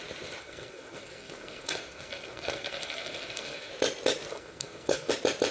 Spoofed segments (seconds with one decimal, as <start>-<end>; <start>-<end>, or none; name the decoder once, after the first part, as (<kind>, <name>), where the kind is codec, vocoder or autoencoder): 0.4-3.7 (codec, SNAC); 4.3-5.1